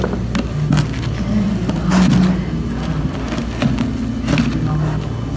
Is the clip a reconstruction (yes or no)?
no